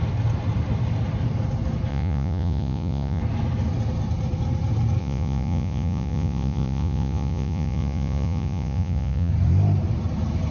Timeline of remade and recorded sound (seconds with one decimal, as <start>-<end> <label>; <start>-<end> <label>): 0.0-1.9 recorded; 1.9-3.2 remade; 3.2-5.0 recorded; 5.0-9.3 remade; 9.3-10.5 recorded